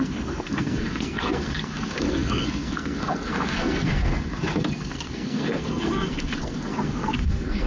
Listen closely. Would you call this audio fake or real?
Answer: fake